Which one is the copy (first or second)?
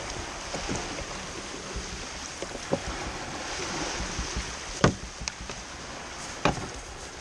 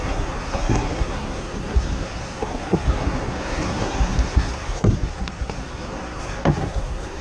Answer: second